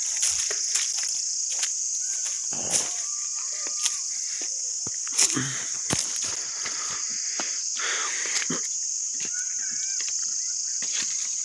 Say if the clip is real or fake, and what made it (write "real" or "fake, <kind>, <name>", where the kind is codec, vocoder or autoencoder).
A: real